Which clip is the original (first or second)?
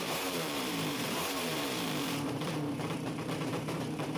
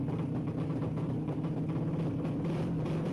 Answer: second